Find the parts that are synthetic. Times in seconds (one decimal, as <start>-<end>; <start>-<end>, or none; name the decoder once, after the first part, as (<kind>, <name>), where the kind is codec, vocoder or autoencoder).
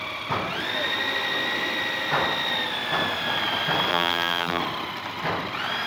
3.9-4.6 (vocoder, BigVGAN v2)